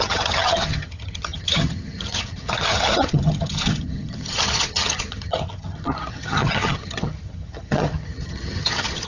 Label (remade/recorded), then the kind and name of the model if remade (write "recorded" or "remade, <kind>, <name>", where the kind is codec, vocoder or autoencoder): remade, vocoder, HiFi-GAN